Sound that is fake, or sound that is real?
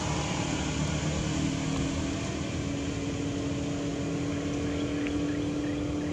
real